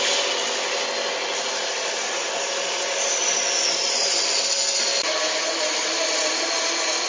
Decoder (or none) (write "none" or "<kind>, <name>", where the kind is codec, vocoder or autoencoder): none